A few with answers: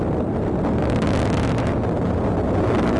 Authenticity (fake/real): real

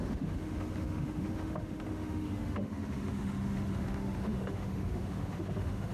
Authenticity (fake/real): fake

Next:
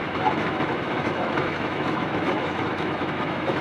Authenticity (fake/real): fake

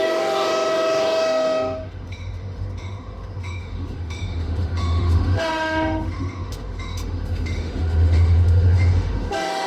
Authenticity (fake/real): fake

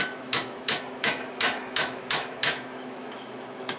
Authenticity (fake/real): fake